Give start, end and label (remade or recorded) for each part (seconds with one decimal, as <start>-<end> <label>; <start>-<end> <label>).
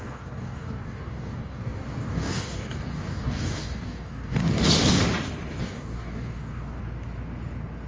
0.0-4.4 remade; 4.4-5.6 recorded; 5.6-6.8 remade; 6.8-7.9 recorded